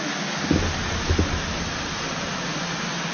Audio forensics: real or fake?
real